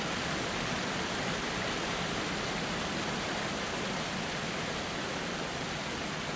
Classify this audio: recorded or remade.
recorded